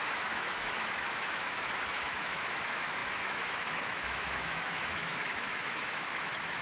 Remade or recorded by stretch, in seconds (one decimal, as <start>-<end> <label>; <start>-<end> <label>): 0.0-6.6 remade